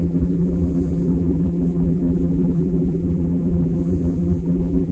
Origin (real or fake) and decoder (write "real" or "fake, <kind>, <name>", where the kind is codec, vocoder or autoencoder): fake, vocoder, BigVGAN v2